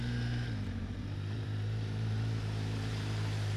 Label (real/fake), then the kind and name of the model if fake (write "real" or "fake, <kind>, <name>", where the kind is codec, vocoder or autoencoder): fake, vocoder, BigVGAN v2